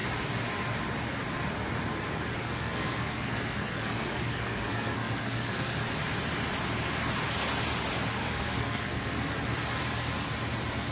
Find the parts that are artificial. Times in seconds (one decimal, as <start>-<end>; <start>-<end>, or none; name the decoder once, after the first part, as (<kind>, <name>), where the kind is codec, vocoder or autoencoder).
2.4-5.7 (codec, SNAC); 8.2-9.3